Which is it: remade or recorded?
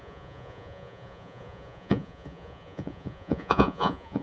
remade